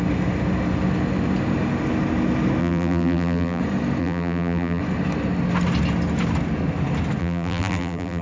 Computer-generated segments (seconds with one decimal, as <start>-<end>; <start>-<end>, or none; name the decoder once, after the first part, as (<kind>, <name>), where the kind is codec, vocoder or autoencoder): 2.6-3.6 (vocoder, BigVGAN v2); 4.0-4.8; 7.2-8.2